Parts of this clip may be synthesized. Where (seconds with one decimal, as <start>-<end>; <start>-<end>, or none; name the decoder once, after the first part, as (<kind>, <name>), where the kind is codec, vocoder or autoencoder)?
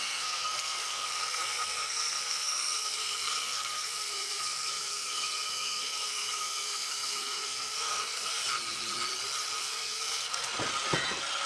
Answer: 0.0-8.4 (codec, SNAC); 9.6-10.5